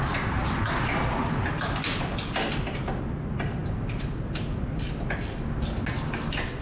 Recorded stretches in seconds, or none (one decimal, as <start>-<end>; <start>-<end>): 0.0-6.6